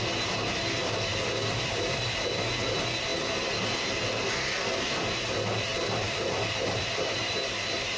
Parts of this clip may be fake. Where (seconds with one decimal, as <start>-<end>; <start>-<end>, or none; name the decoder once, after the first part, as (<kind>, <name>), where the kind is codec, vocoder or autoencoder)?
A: 0.8-2.4 (vocoder, BigVGAN v2); 5.7-8.0